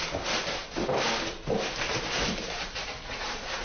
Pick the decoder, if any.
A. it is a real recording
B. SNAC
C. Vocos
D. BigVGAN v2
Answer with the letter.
A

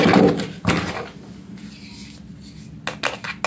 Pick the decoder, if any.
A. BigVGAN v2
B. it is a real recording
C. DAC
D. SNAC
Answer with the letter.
B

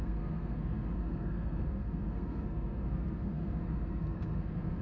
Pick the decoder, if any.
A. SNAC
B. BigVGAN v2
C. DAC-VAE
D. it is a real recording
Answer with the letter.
A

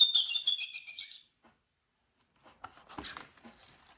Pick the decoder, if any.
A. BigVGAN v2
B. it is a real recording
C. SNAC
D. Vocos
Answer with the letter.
B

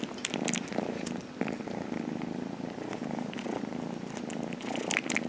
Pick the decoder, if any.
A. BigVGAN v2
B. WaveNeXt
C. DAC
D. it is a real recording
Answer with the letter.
D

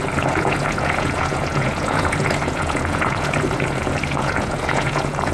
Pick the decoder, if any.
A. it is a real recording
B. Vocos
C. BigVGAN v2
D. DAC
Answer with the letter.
B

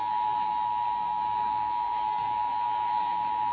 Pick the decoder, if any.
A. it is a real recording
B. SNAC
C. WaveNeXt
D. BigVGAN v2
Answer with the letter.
B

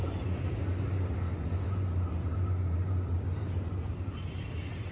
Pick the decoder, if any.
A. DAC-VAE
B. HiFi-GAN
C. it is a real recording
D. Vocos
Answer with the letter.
C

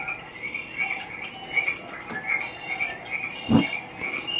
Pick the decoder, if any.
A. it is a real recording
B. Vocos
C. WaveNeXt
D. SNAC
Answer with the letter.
A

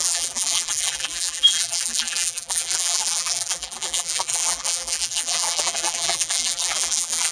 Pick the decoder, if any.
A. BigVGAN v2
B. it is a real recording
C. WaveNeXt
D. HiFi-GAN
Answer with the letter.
A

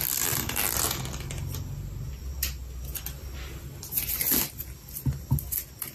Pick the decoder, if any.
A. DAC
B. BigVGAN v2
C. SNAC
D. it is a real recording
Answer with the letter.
D